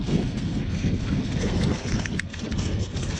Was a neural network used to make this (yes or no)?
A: yes